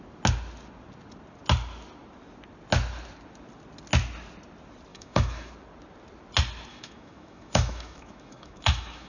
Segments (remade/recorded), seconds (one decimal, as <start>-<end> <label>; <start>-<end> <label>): 0.0-4.9 recorded; 4.9-5.5 remade; 5.5-6.7 recorded; 6.7-9.1 remade